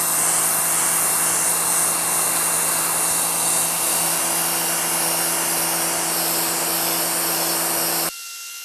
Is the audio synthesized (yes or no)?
no